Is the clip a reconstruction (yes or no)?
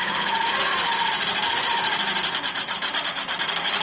no